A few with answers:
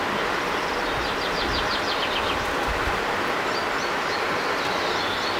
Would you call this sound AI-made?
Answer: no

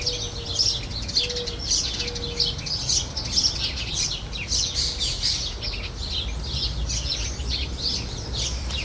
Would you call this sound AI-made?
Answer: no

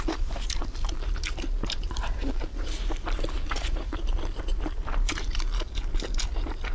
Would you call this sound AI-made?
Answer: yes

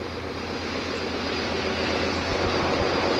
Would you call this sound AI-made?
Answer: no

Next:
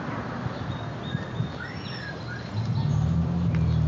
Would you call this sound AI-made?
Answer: no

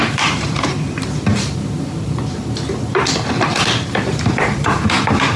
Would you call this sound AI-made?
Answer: yes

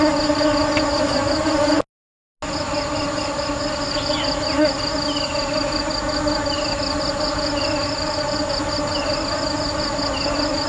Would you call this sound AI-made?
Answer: no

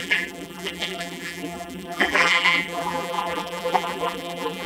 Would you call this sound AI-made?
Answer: yes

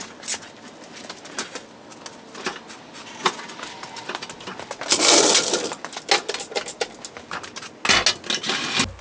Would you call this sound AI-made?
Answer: no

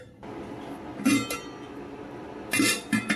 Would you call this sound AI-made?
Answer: no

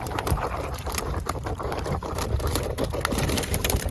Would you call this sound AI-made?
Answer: yes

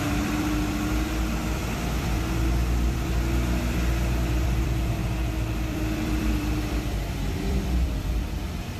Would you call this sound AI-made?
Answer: yes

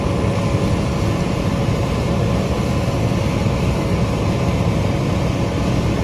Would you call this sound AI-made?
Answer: no